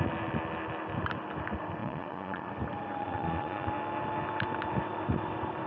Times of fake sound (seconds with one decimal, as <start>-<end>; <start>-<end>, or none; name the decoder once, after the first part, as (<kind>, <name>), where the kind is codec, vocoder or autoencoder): 1.8-2.5 (vocoder, Vocos); 3.0-3.7